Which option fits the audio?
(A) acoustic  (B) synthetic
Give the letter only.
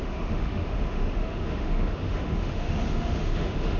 B